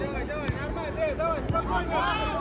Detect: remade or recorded recorded